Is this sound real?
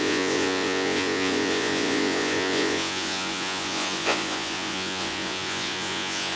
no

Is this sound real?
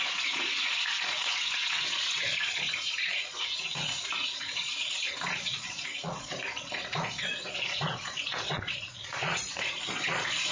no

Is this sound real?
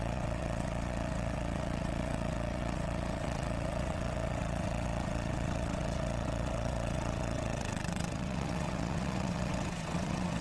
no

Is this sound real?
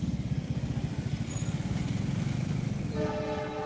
yes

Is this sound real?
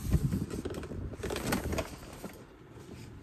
no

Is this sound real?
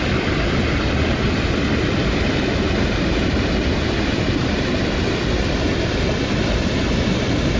no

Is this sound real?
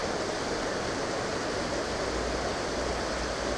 yes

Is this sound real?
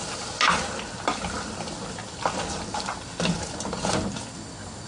yes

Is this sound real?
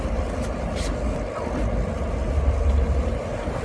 yes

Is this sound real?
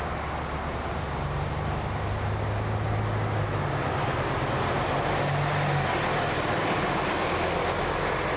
yes